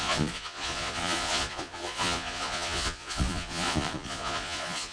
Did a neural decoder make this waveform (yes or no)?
yes